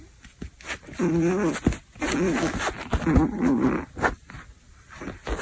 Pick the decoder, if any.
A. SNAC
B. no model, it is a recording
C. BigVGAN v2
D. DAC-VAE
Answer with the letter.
B